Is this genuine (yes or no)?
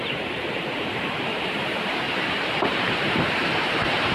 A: no